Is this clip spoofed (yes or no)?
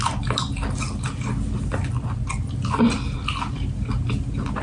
no